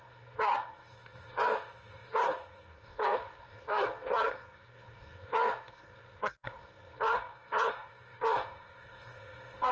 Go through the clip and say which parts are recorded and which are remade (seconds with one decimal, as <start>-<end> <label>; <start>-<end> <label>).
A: 0.0-9.7 remade